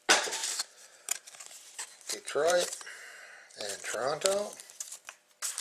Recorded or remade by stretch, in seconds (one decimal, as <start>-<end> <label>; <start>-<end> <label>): 0.0-0.4 recorded; 0.4-3.0 remade; 3.0-5.6 recorded